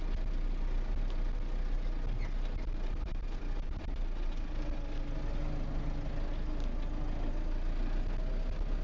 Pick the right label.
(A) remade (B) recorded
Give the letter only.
B